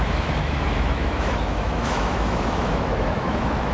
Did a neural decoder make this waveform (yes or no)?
yes